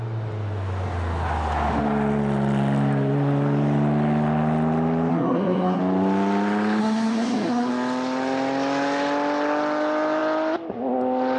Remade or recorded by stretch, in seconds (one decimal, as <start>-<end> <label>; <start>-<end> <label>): 0.0-5.1 recorded; 5.1-5.8 remade; 5.8-6.8 recorded; 6.8-7.7 remade; 7.7-11.4 recorded